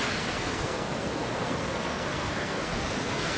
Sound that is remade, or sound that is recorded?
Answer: remade